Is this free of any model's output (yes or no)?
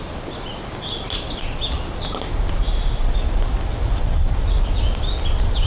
yes